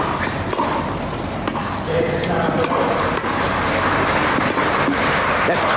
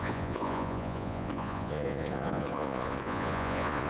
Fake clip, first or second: second